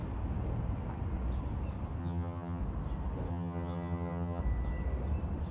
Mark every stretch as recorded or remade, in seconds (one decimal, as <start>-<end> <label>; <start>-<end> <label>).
0.0-2.0 recorded; 2.0-2.6 remade; 2.6-3.3 recorded; 3.3-4.4 remade; 4.4-5.5 recorded